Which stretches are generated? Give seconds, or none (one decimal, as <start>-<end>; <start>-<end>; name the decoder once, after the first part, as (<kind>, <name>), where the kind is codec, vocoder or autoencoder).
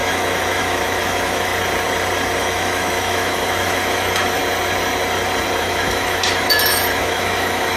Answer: 0.0-1.5 (autoencoder, DAC-VAE); 2.4-4.4; 5.6-7.8